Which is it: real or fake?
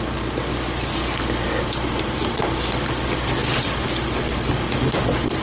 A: real